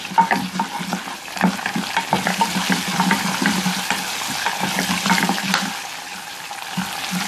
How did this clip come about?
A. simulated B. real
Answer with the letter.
B